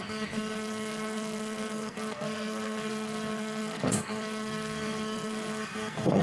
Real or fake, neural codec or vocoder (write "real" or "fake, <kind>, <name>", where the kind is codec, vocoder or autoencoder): fake, codec, SNAC